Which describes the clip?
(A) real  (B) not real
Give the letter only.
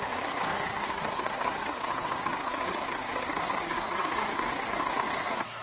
B